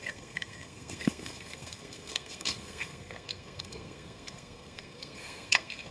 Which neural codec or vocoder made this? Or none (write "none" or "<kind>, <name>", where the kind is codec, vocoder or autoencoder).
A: codec, SNAC